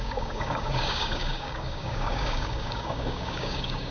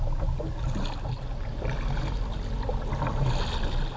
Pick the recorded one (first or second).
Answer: second